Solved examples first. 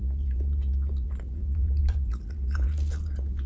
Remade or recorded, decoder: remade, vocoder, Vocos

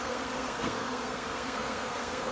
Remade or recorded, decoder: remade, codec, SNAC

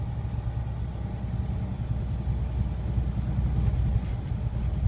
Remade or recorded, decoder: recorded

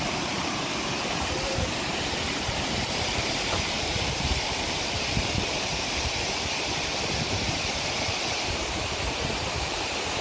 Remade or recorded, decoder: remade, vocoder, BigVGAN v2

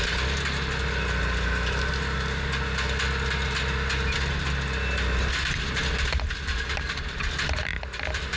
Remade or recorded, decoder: recorded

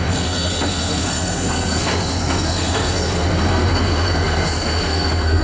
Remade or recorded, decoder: remade, codec, SNAC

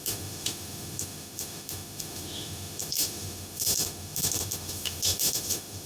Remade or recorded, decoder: remade, autoencoder, DAC-VAE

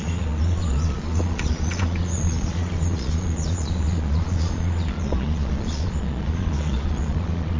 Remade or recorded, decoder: remade, vocoder, Vocos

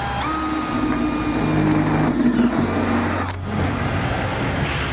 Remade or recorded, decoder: recorded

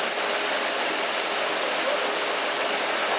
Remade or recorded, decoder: recorded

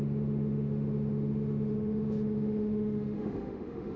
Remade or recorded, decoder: remade, autoencoder, DAC-VAE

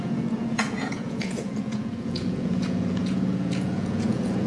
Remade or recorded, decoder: remade, vocoder, Vocos